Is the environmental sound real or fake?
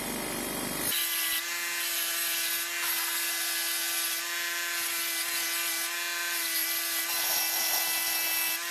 real